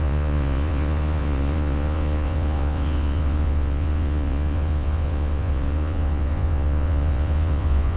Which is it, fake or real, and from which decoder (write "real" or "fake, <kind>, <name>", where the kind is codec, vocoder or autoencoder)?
fake, vocoder, Vocos